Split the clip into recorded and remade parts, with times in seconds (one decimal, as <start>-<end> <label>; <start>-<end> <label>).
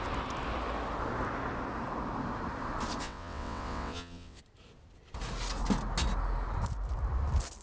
0.0-3.0 recorded; 3.0-4.4 remade; 4.4-7.6 recorded